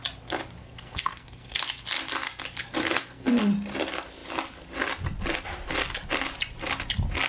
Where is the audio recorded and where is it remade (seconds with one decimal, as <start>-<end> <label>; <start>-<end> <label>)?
0.0-0.6 recorded; 0.6-1.6 remade; 1.6-2.8 recorded; 2.8-3.4 remade; 3.4-7.3 recorded